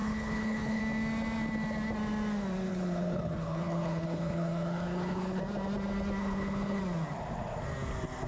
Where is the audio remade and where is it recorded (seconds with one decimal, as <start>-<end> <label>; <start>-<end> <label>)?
0.0-0.8 remade; 0.8-2.7 recorded; 2.7-5.4 remade; 5.4-6.2 recorded; 6.2-6.8 remade; 6.8-8.3 recorded